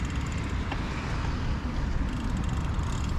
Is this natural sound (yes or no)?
no